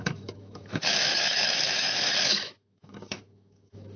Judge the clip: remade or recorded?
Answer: remade